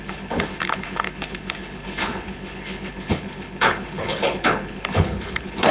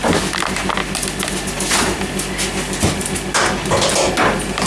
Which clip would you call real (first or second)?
second